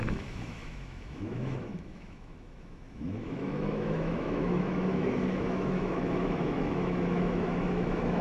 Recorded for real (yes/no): no